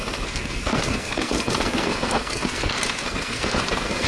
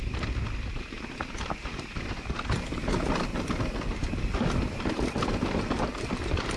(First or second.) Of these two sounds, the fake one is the first